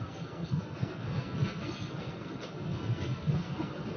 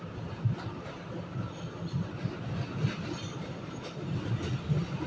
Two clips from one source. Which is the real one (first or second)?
second